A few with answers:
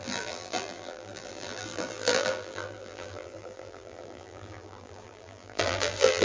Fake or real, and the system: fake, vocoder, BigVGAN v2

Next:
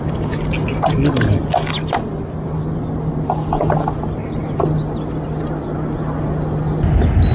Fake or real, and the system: real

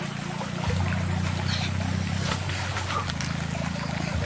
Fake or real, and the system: real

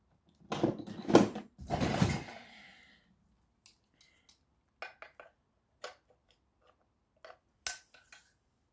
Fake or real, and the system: real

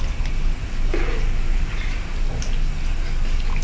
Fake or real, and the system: real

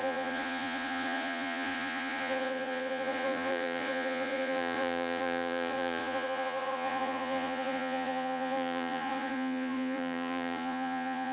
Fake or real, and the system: fake, vocoder, Vocos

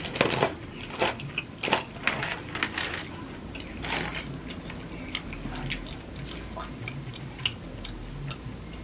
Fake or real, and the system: real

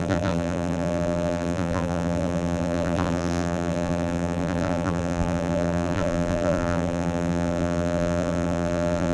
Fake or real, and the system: fake, vocoder, BigVGAN v2